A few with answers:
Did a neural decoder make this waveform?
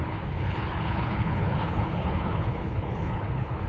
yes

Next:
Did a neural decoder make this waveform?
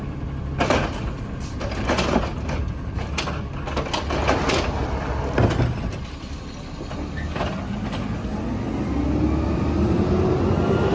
no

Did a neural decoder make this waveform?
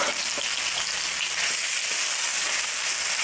no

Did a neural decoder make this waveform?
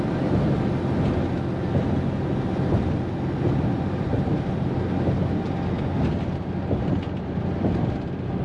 no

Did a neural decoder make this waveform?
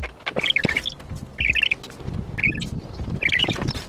no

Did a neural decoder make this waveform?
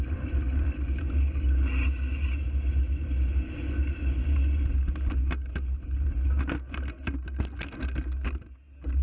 no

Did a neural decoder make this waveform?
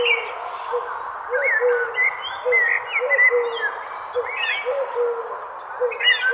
no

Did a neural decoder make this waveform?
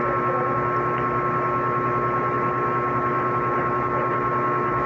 no